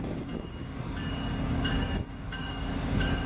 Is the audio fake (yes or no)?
yes